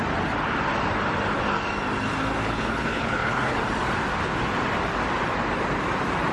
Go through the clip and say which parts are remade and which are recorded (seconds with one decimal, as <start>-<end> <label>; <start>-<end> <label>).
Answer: 0.0-2.4 recorded; 2.4-3.6 remade; 3.6-6.3 recorded